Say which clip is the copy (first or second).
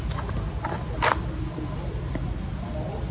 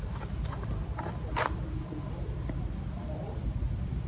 second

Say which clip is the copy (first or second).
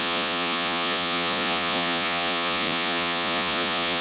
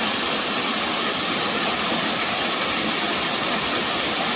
first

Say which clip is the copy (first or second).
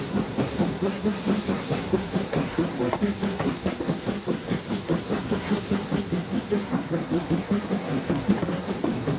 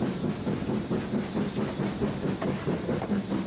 first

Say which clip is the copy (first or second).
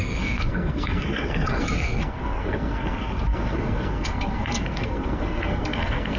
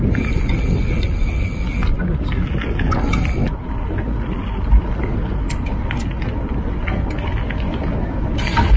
first